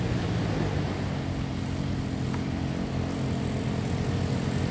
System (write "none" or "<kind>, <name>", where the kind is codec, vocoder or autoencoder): none